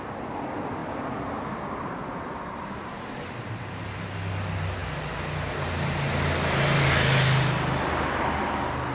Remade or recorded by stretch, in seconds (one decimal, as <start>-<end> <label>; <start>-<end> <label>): 0.0-0.8 recorded; 0.8-4.1 remade; 4.1-8.9 recorded